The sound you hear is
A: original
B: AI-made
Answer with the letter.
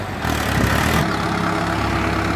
A